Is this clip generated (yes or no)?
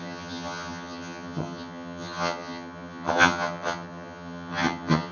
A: yes